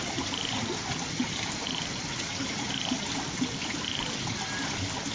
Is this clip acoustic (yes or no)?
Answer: yes